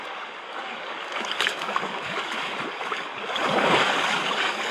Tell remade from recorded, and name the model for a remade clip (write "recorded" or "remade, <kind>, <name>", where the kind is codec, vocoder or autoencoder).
remade, codec, DAC